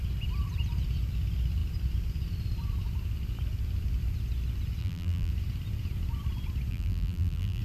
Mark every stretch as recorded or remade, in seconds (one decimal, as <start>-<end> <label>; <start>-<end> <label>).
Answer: 0.0-4.8 recorded; 4.8-5.3 remade; 5.3-6.7 recorded; 6.7-7.6 remade